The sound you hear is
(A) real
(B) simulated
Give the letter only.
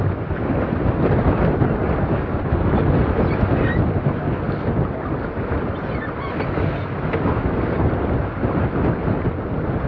A